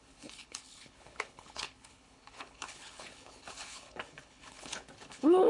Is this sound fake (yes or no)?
yes